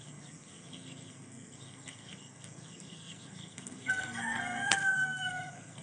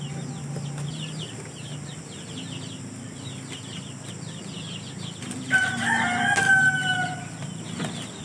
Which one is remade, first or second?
first